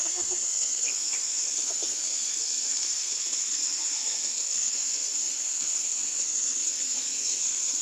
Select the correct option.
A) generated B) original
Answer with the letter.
A